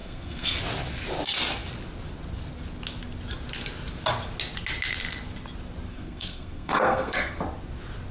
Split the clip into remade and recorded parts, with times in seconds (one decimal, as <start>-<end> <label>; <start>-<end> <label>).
0.0-0.6 remade; 0.6-5.9 recorded; 5.9-7.4 remade; 7.4-8.1 recorded

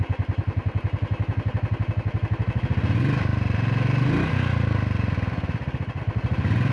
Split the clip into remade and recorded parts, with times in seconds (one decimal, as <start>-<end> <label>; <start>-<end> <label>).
0.0-6.7 recorded

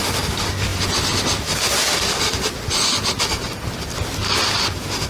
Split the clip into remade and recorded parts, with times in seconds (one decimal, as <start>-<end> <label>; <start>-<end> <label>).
0.0-5.1 recorded

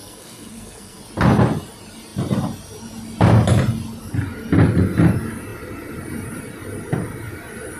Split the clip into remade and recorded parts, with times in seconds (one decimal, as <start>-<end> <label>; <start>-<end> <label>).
0.0-1.0 remade; 1.0-7.8 recorded

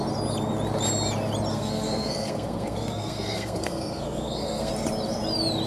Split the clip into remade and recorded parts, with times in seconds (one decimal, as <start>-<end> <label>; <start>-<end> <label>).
0.0-1.5 recorded; 1.5-4.7 remade; 4.7-5.7 recorded

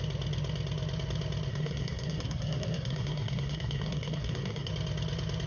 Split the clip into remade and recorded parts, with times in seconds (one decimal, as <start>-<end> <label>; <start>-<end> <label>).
0.0-1.5 recorded; 1.5-4.7 remade; 4.7-5.5 recorded

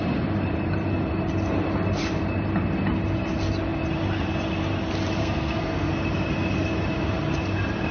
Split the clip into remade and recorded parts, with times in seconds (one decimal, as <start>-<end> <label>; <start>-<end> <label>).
0.0-5.2 recorded; 5.2-5.9 remade; 5.9-7.9 recorded

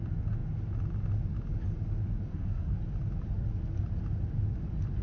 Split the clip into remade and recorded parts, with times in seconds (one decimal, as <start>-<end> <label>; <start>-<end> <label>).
0.0-2.3 recorded; 2.3-2.8 remade; 2.8-5.0 recorded